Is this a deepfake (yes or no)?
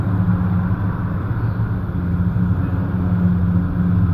no